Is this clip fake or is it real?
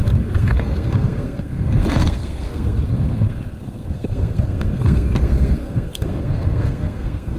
fake